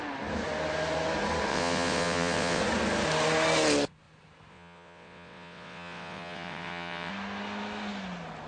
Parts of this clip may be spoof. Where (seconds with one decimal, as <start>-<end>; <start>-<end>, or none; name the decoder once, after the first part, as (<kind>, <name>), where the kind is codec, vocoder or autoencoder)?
1.5-2.6 (vocoder, WaveNeXt); 4.5-7.1